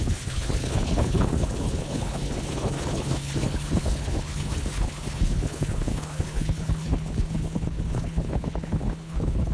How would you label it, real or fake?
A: fake